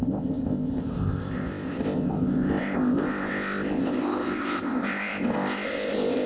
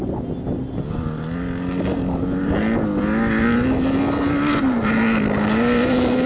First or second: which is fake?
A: first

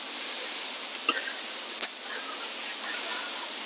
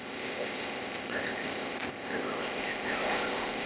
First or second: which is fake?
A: second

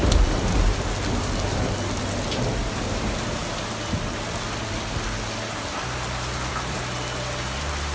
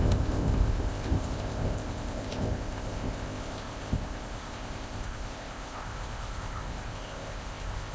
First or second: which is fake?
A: second